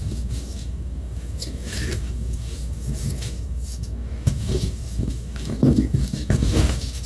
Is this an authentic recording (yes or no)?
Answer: no